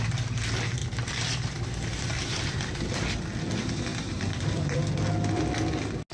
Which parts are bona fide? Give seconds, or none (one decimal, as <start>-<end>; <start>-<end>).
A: 0.0-0.8; 1.5-3.9; 5.0-6.1